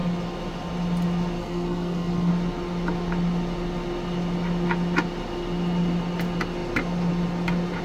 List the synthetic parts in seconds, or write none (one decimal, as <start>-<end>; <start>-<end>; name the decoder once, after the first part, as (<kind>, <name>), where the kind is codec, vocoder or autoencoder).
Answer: 1.4-2.3 (codec, SNAC)